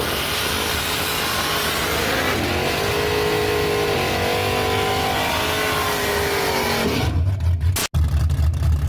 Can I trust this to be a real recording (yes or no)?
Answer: yes